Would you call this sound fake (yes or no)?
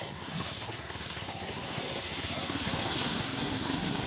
yes